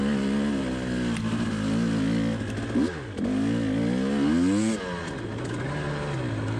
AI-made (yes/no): no